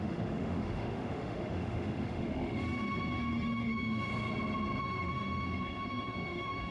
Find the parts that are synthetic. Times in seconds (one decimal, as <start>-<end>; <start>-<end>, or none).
0.0-4.1; 4.8-6.7